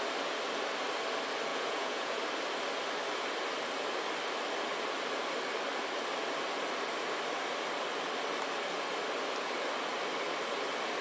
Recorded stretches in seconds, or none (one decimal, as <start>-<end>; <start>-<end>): 0.0-1.5; 2.2-11.0